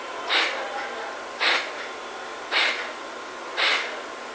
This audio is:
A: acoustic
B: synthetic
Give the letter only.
A